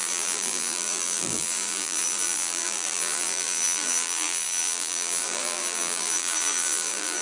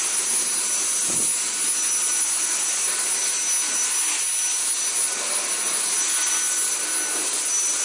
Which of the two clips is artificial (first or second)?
first